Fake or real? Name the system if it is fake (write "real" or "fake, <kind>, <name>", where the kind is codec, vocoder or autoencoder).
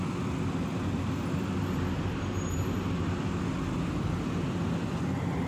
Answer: real